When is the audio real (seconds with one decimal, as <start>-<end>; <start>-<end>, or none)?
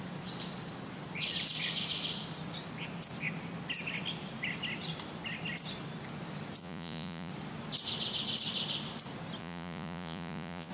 0.0-6.6; 7.3-9.4